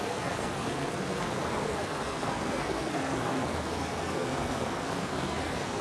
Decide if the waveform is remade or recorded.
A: remade